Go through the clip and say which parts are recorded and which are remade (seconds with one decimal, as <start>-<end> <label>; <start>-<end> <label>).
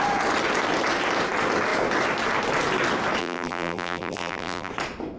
0.0-3.2 recorded; 3.2-4.7 remade; 4.7-5.2 recorded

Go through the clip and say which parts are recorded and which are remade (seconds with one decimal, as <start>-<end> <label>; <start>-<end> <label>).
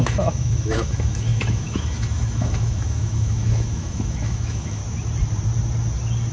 0.0-4.8 remade; 4.8-6.3 recorded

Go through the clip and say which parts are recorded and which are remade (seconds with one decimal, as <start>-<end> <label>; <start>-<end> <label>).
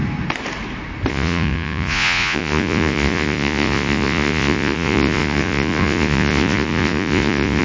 0.0-1.1 recorded; 1.1-7.6 remade